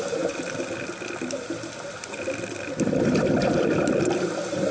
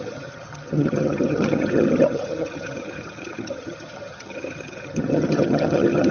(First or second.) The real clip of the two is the first